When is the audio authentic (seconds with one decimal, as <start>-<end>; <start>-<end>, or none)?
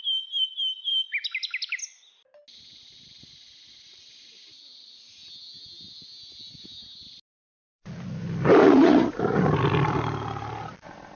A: 0.0-8.6; 9.2-11.2